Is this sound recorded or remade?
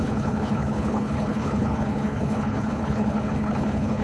remade